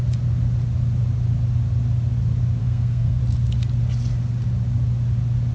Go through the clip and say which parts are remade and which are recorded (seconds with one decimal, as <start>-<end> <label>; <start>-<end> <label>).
0.0-2.6 recorded; 2.6-3.2 remade; 3.2-5.5 recorded